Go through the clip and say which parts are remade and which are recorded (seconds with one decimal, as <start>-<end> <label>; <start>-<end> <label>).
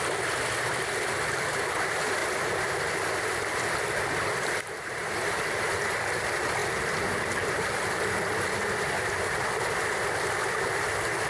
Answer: 0.0-11.3 recorded